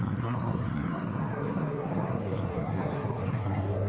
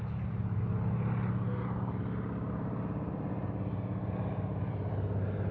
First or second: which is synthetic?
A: first